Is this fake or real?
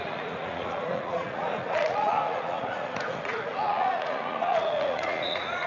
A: fake